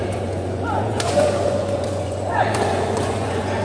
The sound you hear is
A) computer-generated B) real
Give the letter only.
A